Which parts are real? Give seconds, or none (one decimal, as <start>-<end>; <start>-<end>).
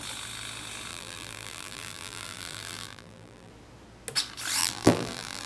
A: 0.0-0.9; 3.5-4.6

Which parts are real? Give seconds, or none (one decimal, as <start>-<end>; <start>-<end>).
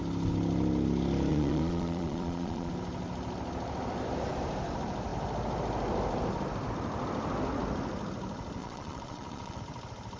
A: 0.0-1.3; 2.7-8.6; 9.6-10.2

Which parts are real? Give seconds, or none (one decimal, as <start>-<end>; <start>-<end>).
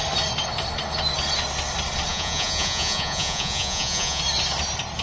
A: 0.0-2.1; 4.2-5.0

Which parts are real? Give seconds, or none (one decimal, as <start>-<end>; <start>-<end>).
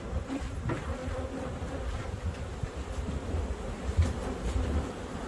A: 0.0-5.3